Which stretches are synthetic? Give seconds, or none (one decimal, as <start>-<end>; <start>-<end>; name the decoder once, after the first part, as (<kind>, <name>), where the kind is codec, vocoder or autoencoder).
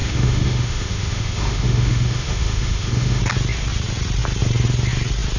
0.0-3.2 (autoencoder, DAC-VAE)